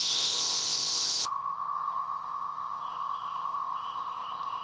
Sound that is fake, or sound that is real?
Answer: fake